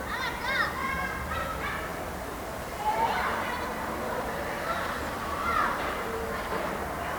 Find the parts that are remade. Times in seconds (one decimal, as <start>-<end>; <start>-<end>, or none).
1.9-6.0